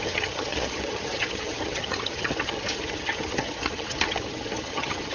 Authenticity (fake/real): fake